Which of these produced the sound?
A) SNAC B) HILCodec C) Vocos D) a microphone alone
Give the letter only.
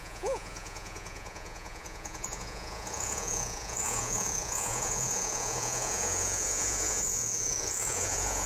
C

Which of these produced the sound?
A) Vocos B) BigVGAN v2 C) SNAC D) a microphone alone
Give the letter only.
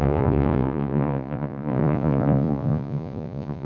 A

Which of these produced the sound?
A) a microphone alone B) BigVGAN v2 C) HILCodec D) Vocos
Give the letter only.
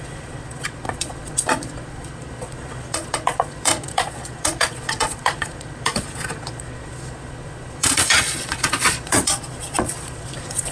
D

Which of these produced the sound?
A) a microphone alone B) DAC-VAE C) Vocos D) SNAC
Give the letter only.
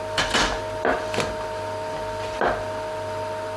A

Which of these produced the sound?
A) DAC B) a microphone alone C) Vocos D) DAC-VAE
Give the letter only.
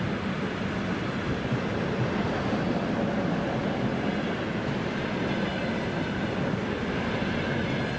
B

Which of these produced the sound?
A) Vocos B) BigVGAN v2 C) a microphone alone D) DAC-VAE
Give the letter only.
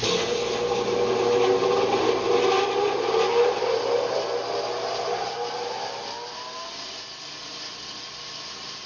C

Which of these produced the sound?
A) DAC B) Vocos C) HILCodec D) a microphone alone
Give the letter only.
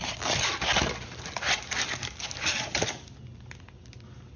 D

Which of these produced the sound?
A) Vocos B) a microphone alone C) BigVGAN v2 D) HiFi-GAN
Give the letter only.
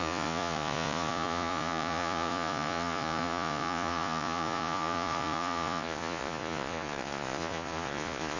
A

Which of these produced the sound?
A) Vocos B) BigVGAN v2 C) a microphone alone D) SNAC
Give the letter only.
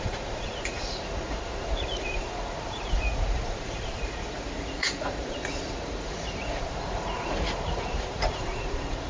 A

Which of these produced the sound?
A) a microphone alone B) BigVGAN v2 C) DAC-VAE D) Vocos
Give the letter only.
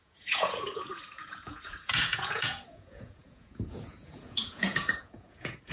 D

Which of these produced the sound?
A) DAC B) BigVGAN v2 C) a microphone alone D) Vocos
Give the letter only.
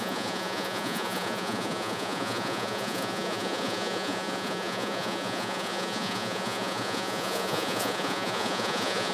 D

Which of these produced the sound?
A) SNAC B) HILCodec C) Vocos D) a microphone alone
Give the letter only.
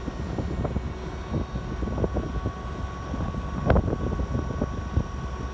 D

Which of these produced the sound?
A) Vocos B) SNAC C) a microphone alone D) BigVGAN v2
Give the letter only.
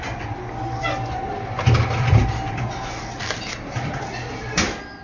C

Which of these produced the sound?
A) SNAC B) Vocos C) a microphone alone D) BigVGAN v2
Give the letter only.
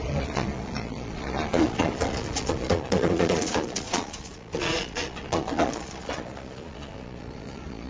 B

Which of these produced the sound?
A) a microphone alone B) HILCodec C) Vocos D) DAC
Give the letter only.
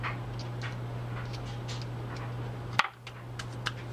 A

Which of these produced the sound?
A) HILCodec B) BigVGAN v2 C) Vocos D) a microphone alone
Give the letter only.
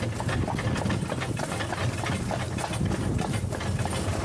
D